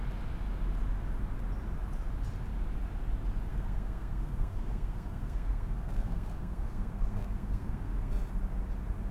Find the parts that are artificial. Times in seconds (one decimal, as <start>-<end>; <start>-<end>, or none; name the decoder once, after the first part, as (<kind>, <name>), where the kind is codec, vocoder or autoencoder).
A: 3.5-8.1 (codec, SNAC)